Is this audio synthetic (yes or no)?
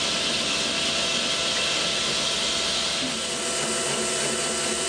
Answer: no